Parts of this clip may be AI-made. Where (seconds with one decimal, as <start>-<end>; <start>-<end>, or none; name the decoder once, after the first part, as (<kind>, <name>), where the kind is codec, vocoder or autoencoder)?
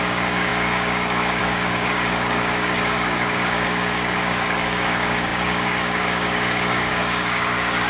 0.0-7.9 (codec, DAC)